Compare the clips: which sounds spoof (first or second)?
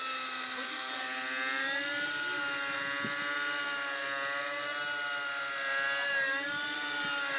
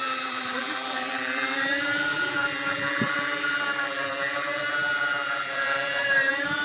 second